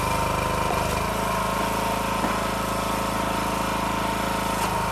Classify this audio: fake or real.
real